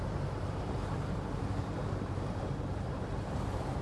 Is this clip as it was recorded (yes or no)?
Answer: no